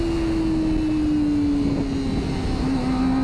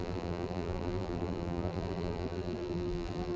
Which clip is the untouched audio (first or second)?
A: first